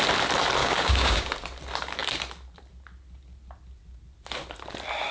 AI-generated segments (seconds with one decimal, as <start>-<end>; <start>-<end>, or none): 0.6-1.3